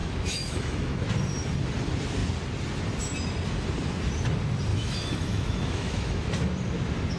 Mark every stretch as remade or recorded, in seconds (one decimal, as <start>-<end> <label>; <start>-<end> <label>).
0.0-1.1 remade; 1.1-4.7 recorded; 4.7-6.3 remade; 6.3-7.2 recorded